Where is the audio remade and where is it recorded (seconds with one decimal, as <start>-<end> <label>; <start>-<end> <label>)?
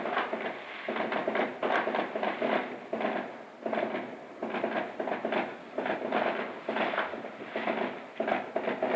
0.0-1.2 recorded; 1.2-2.5 remade; 2.5-9.0 recorded